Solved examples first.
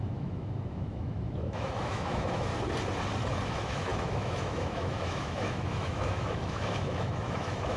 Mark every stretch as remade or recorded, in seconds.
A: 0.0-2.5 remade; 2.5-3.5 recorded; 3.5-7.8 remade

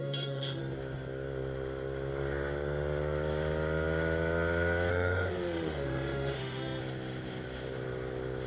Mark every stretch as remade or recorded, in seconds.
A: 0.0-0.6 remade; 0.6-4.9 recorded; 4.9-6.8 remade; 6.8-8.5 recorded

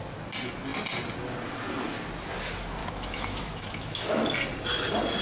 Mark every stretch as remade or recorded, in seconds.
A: 0.0-2.8 recorded; 2.8-4.2 remade; 4.2-5.2 recorded